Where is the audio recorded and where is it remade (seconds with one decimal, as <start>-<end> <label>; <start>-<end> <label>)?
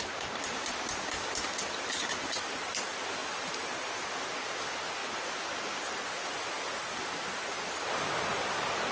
0.0-8.9 recorded